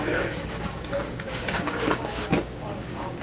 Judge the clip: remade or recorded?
remade